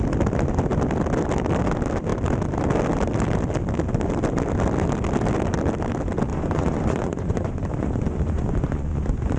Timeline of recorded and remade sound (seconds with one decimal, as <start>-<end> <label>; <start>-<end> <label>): 0.0-6.3 recorded; 6.3-9.4 remade